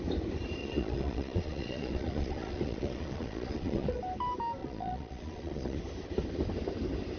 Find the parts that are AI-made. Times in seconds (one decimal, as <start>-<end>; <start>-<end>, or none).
0.6-4.0; 4.6-5.8